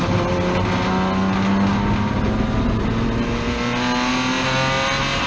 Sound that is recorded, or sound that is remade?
recorded